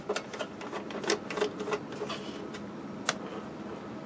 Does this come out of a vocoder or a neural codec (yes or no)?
no